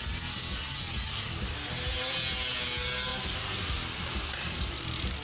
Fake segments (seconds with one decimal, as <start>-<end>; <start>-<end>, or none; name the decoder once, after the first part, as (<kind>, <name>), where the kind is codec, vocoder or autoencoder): 3.1-4.7 (vocoder, BigVGAN v2)